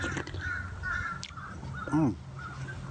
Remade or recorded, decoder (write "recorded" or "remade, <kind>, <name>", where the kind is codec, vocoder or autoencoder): recorded